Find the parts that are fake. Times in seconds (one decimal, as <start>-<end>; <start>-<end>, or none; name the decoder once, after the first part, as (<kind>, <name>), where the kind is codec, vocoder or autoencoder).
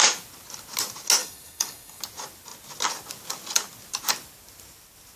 1.2-2.0 (codec, DAC)